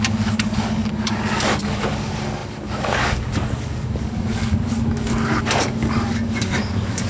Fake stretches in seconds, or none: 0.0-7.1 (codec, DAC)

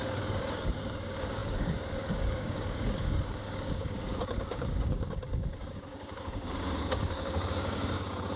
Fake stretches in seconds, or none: 0.0-8.4 (codec, DAC)

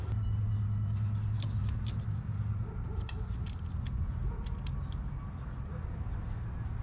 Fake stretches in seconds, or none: none

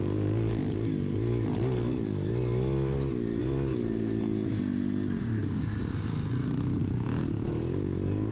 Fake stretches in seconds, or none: 0.0-0.6 (codec, DAC); 5.2-5.7; 6.8-8.3

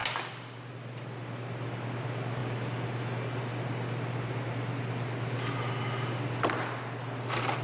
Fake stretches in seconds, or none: none

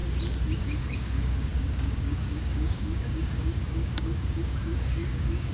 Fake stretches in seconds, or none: 0.6-5.5 (codec, DAC)

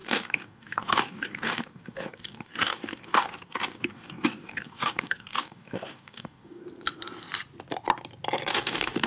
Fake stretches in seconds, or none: 0.0-6.6 (codec, DAC); 8.5-9.1